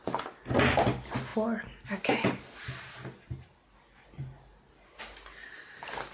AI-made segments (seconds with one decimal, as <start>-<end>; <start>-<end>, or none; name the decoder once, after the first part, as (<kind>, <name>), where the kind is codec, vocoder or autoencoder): none